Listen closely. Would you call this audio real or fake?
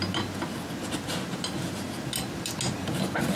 real